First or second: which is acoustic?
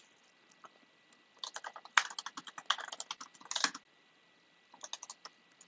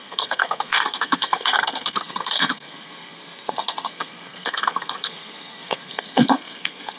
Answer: first